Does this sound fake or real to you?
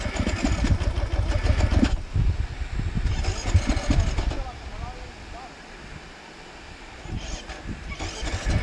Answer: real